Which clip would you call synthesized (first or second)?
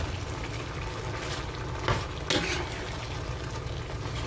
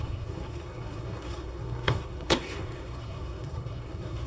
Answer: second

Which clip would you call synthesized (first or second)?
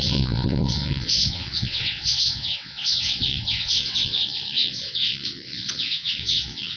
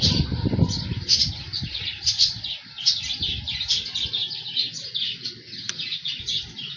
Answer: first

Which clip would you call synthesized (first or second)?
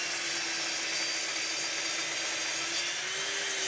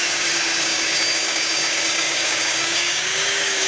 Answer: second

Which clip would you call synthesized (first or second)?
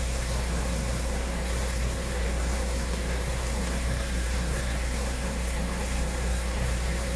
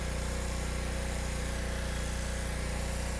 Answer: first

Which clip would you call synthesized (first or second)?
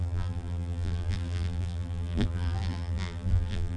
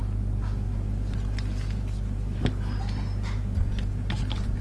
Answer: first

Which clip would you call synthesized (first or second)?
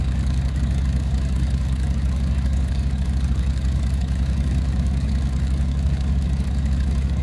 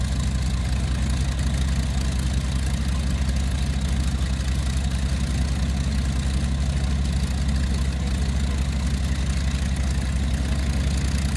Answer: first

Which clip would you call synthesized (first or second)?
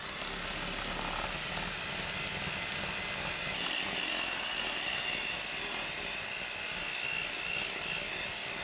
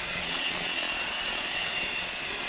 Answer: second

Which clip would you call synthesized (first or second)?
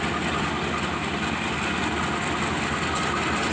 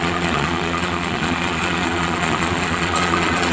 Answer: second